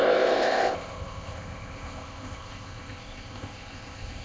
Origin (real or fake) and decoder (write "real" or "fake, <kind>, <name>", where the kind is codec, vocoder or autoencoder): fake, codec, ZipCodec